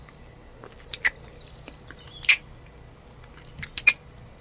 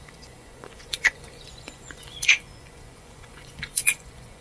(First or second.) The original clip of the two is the first